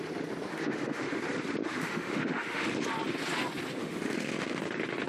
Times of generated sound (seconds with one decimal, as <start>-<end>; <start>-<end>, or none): 0.5-1.2; 1.6-2.8; 3.8-4.6